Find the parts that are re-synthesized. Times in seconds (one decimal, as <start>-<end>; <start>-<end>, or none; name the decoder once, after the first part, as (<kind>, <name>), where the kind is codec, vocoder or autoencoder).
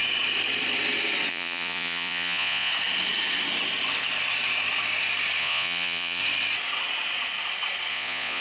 1.3-2.7 (vocoder, Vocos); 5.4-6.2; 7.9-8.4